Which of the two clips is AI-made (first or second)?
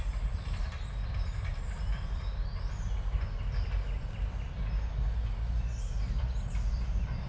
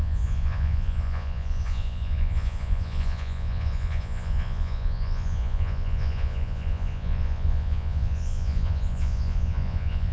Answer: second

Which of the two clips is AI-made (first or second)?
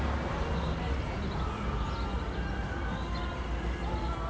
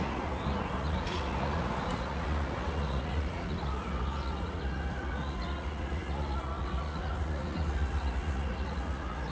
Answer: second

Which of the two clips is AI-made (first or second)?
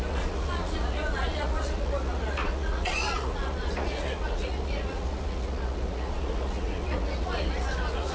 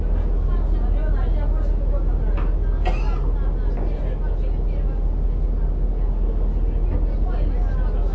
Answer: first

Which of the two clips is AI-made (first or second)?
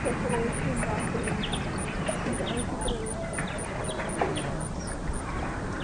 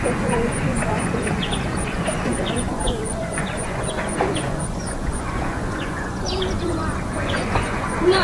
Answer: second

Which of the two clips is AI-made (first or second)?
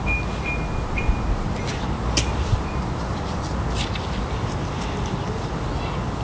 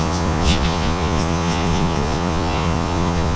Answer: second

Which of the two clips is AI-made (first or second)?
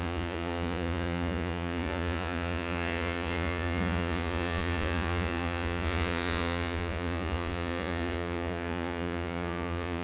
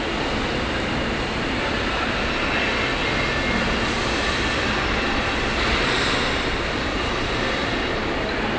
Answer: first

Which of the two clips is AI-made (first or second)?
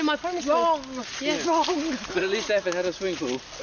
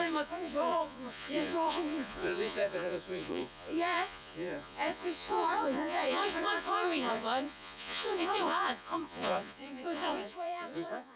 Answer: second